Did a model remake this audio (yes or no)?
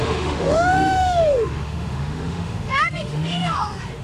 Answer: yes